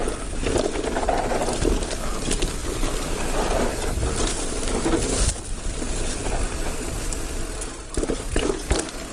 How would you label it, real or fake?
real